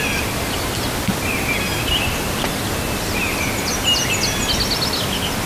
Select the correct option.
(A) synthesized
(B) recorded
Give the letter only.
B